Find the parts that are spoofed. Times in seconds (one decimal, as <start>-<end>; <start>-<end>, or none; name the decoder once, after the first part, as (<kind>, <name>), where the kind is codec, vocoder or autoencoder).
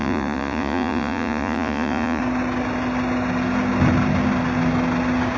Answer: 0.0-2.2 (vocoder, Vocos)